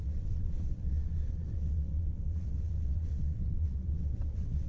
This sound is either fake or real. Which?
fake